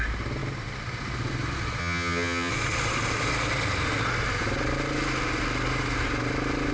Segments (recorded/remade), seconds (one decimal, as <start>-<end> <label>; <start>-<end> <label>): 0.0-1.8 recorded; 1.8-2.5 remade; 2.5-6.7 recorded

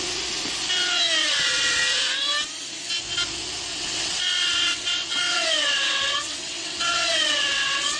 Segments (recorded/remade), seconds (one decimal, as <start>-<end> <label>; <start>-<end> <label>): 0.0-1.2 recorded; 1.2-1.8 remade; 1.8-3.7 recorded; 3.7-8.0 remade

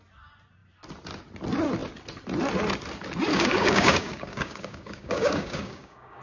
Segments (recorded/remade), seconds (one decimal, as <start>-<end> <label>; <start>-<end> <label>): 0.0-3.3 recorded; 3.3-6.2 remade

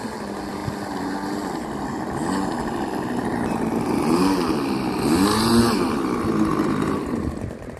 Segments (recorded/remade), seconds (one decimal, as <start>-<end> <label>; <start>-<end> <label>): 0.0-7.8 recorded

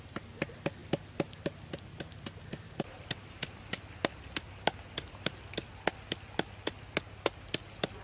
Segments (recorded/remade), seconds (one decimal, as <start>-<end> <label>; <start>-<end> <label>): 0.0-8.0 recorded

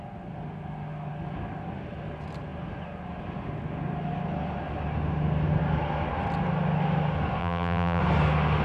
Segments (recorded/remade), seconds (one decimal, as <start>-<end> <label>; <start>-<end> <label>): 0.0-7.4 recorded; 7.4-8.0 remade; 8.0-8.6 recorded

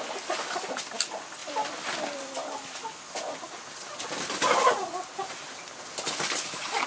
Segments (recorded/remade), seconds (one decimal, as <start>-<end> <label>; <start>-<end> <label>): 0.0-6.9 recorded

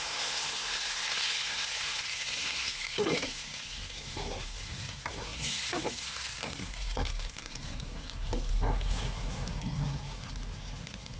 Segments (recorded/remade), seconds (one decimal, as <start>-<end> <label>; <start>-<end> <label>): 0.0-11.2 remade